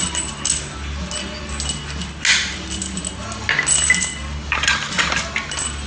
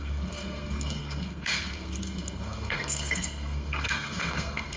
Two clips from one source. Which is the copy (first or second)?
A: second